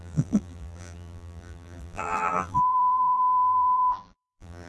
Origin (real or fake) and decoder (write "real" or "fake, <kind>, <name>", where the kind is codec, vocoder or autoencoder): fake, vocoder, BigVGAN v2